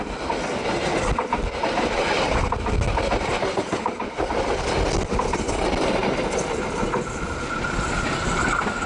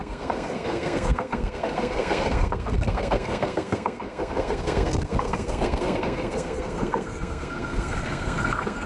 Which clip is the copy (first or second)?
second